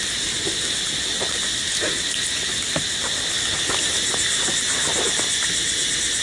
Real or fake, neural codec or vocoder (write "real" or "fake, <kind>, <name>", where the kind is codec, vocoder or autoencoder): real